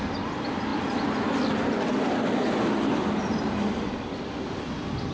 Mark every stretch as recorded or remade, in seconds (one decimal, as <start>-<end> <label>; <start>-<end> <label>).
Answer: 0.0-5.1 recorded